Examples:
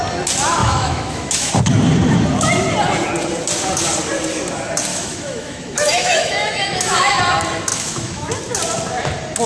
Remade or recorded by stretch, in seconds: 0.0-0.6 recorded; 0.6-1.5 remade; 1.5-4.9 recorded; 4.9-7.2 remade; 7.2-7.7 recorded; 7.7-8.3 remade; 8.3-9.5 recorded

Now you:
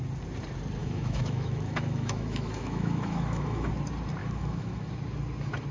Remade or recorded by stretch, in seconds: 0.0-0.8 recorded; 0.8-3.7 remade; 3.7-4.2 recorded; 4.2-4.9 remade; 4.9-5.7 recorded

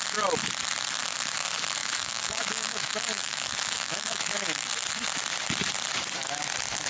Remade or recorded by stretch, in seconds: 0.0-1.8 recorded; 1.8-4.7 remade; 4.7-6.9 recorded

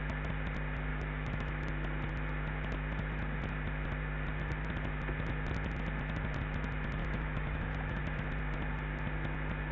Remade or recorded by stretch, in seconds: 0.0-0.9 recorded; 0.9-1.7 remade; 1.7-7.0 recorded; 7.0-8.0 remade; 8.0-9.7 recorded

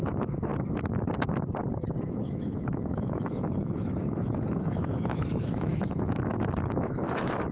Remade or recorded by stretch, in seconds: 0.0-0.5 remade; 0.5-2.0 recorded; 2.0-7.5 remade

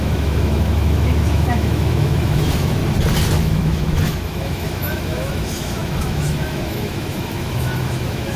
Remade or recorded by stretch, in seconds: 0.0-2.8 remade; 2.8-3.4 recorded; 3.4-8.4 remade